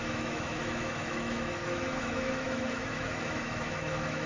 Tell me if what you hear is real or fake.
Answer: fake